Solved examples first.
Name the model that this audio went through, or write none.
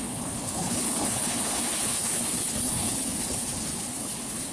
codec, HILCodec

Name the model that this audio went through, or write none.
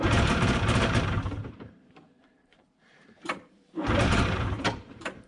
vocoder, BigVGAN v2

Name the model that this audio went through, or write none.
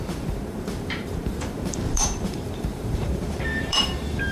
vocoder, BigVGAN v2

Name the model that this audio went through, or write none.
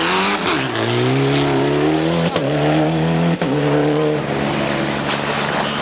none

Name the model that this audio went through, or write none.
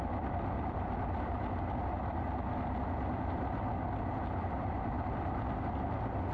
none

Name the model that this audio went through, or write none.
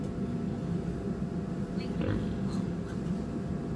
none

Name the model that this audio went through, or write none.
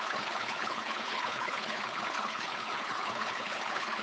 codec, HILCodec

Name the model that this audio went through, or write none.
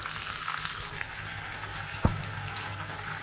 codec, SNAC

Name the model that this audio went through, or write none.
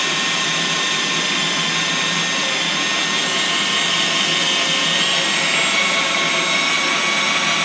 none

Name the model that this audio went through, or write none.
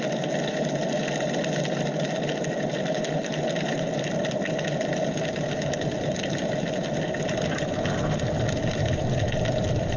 none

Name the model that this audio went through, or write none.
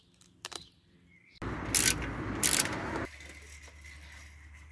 none